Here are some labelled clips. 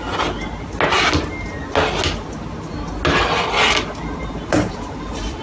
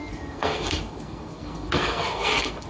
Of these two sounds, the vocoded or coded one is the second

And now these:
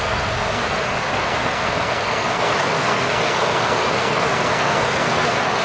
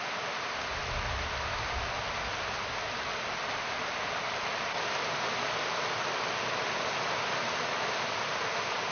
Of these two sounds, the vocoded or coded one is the first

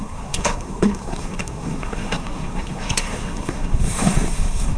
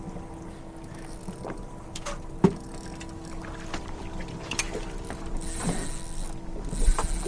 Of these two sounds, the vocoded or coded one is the first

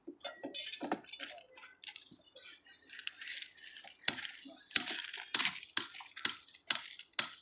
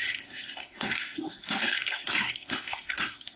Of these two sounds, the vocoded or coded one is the second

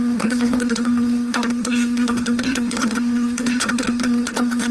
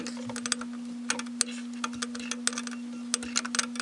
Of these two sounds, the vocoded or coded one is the first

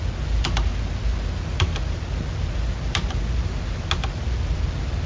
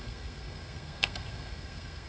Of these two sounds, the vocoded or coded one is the second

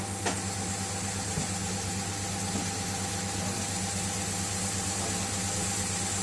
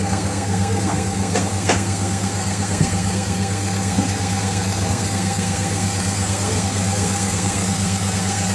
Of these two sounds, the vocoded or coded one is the second